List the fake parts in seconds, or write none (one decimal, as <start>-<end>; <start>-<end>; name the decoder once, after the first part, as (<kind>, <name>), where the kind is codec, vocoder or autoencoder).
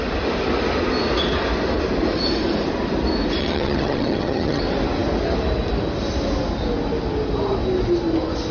3.4-4.6 (vocoder, HiFi-GAN)